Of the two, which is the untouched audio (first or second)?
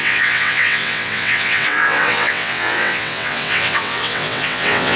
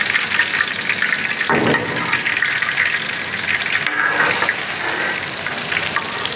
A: second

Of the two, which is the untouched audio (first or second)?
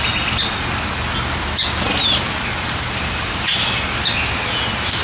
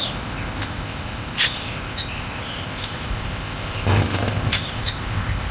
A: first